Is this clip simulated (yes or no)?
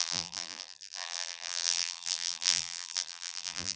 yes